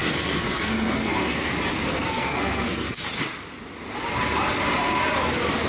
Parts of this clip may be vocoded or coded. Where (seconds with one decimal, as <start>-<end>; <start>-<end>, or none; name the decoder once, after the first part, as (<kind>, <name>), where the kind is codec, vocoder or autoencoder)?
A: 0.0-1.5 (codec, SNAC); 1.9-3.0